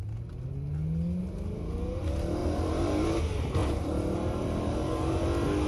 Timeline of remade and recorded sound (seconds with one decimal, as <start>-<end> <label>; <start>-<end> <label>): 0.0-2.4 recorded; 2.4-3.2 remade; 3.2-3.6 recorded; 3.6-5.1 remade; 5.1-5.7 recorded